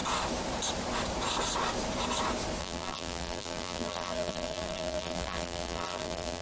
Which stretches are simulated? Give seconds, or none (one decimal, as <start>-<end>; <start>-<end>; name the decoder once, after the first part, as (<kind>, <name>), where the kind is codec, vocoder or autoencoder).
2.6-6.4 (vocoder, BigVGAN v2)